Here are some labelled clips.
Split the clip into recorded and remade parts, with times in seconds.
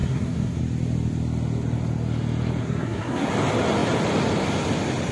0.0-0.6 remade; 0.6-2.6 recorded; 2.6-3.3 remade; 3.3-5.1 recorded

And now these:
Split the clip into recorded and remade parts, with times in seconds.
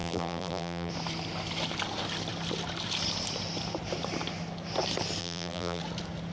0.0-0.9 remade; 0.9-5.2 recorded; 5.2-5.8 remade; 5.8-6.3 recorded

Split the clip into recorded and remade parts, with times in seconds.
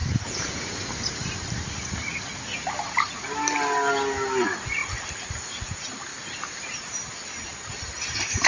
0.0-0.8 remade; 0.8-8.5 recorded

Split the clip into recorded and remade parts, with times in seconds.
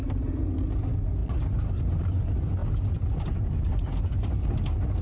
0.0-5.0 recorded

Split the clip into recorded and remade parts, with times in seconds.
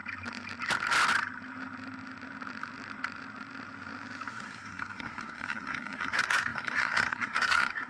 0.0-4.3 recorded; 4.3-7.9 remade